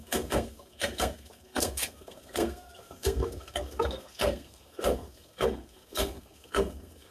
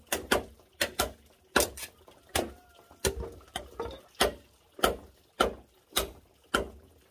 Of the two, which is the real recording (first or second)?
second